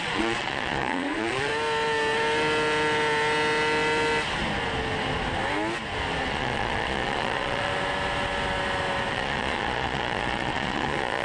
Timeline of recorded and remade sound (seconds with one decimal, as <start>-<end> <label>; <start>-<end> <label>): 0.0-1.5 remade; 1.5-6.3 recorded; 6.3-7.7 remade; 7.7-9.1 recorded; 9.1-11.2 remade